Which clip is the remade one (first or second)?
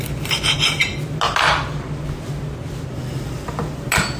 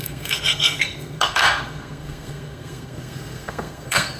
second